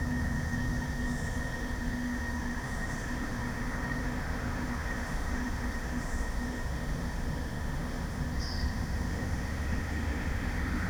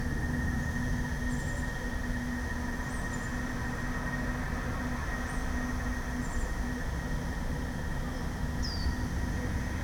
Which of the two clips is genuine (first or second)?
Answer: second